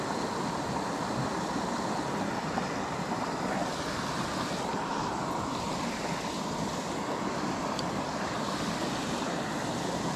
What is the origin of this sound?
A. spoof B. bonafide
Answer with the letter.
B